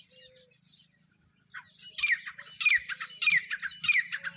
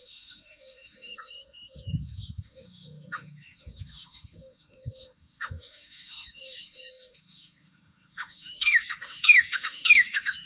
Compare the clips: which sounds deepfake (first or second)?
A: second